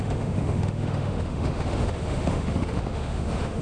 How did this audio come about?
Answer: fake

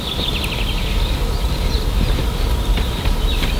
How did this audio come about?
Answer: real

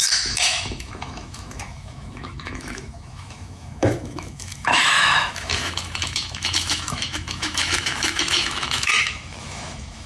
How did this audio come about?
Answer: fake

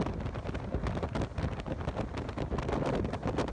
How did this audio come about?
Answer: real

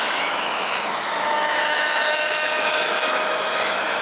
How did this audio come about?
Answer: fake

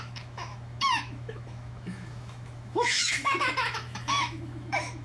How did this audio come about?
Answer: fake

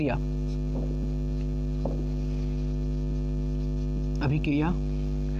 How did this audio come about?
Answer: real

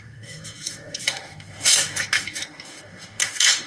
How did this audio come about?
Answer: fake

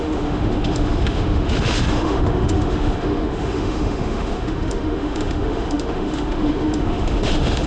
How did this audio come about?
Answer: fake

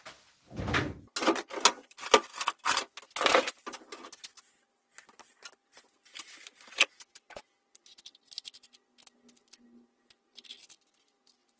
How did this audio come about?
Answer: real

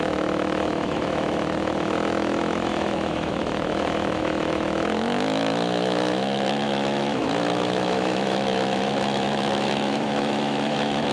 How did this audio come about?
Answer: fake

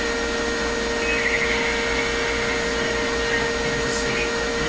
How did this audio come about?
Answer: real